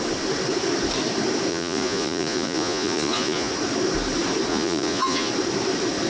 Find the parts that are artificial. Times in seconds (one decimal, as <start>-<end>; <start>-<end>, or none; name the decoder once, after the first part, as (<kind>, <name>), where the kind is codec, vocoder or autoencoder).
1.5-3.5 (vocoder, Vocos); 4.5-5.3